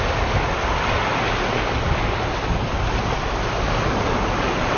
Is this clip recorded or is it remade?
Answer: recorded